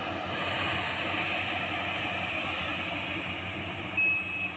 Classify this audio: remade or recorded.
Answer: recorded